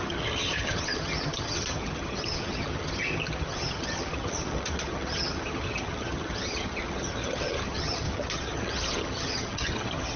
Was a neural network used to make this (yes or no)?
yes